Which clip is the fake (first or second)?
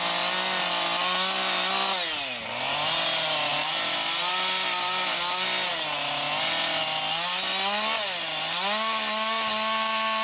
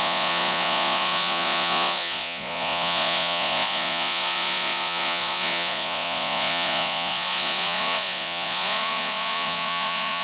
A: second